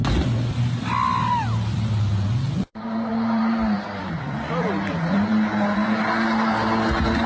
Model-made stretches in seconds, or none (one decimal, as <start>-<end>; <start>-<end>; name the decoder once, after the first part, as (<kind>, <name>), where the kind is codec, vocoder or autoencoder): 0.8-2.1 (vocoder, BigVGAN v2); 3.1-5.3